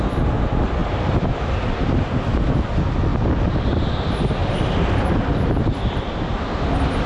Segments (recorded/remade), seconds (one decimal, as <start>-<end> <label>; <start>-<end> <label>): 0.0-0.8 recorded; 0.8-1.6 remade; 1.6-4.4 recorded; 4.4-5.0 remade; 5.0-7.1 recorded